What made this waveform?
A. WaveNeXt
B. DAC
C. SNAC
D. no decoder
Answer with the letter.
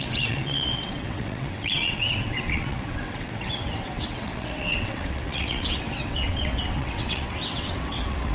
A